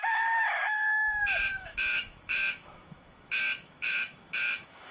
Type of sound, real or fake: fake